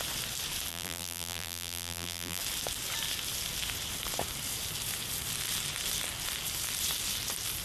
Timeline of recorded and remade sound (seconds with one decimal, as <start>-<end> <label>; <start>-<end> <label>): 0.0-0.7 recorded; 0.7-2.4 remade; 2.4-7.6 recorded